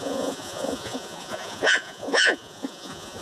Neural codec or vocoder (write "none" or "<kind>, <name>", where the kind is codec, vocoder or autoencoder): vocoder, Vocos